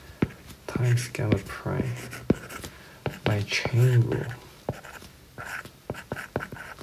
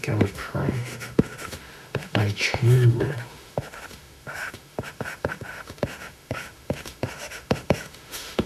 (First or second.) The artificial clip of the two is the second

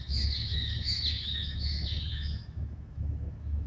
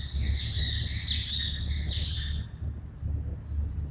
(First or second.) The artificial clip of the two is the first